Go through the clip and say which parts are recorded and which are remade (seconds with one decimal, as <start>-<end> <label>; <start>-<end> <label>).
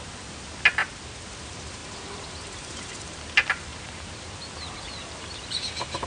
0.0-1.8 recorded; 1.8-3.2 remade; 3.2-3.7 recorded; 3.7-4.2 remade; 4.2-6.1 recorded